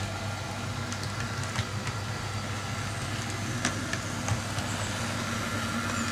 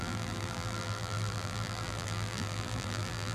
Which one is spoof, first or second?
second